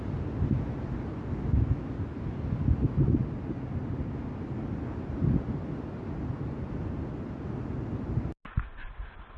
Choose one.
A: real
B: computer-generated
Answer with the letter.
A